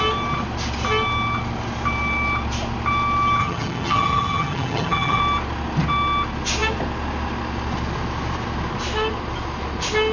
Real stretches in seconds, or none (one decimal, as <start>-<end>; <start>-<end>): 0.0-3.4; 5.2-10.1